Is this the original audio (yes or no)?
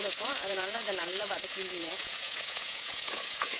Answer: no